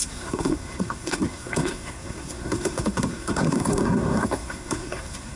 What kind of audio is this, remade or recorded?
remade